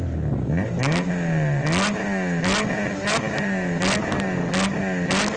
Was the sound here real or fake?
real